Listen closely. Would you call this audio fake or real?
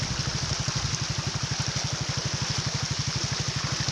real